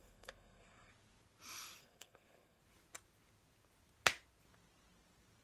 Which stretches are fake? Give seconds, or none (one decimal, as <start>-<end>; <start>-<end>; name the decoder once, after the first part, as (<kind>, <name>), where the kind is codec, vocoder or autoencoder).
0.0-0.9 (codec, SNAC); 1.8-2.6